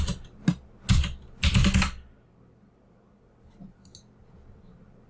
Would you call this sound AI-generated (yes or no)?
no